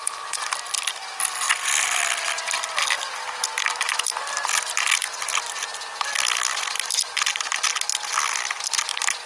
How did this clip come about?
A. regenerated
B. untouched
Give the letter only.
B